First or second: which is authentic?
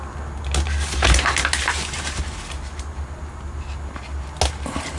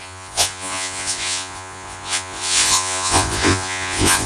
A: first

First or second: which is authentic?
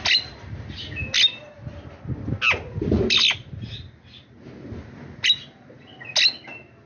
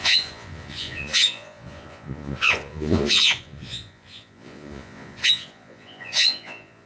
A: first